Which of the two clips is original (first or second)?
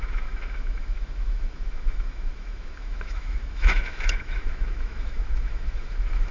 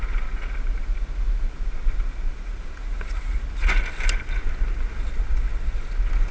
second